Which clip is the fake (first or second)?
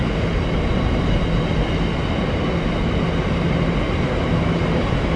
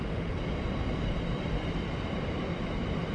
second